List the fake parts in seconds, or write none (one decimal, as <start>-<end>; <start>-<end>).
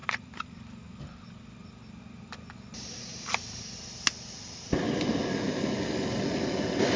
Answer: 0.0-1.0; 2.9-3.6